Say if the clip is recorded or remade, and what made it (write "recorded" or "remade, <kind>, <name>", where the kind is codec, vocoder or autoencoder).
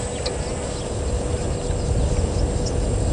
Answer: recorded